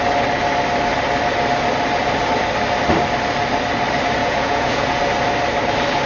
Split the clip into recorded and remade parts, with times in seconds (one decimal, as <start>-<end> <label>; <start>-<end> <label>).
0.0-4.2 recorded; 4.2-5.0 remade; 5.0-6.1 recorded